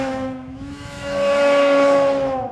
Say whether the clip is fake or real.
fake